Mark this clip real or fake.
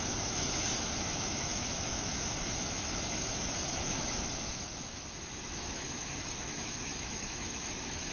fake